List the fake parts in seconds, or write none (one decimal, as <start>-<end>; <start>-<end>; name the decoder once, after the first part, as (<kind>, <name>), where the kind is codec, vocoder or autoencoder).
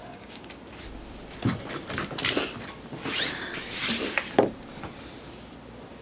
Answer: 0.0-0.5 (codec, DAC)